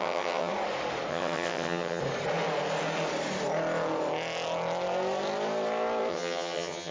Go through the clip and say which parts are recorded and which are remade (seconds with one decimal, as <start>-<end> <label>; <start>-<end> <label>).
0.0-0.5 remade; 0.5-1.1 recorded; 1.1-2.0 remade; 2.0-6.1 recorded; 6.1-6.9 remade